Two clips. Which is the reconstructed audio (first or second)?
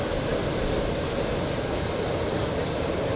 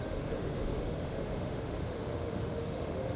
second